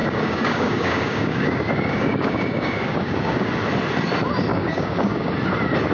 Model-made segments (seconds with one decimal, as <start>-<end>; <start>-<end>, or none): 0.0-3.5; 4.5-5.3